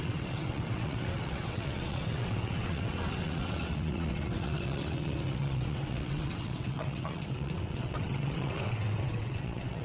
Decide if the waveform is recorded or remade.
remade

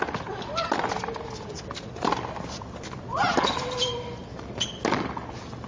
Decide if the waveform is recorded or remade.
recorded